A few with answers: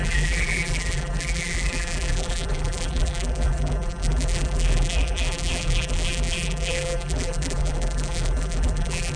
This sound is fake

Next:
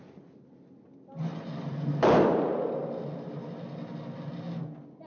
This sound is real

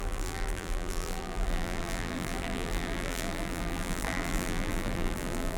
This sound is fake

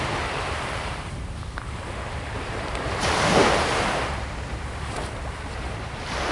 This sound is fake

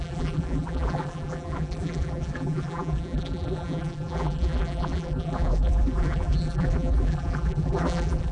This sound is fake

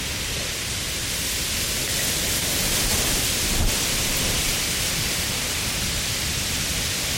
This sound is real